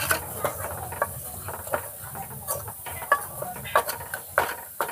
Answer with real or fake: fake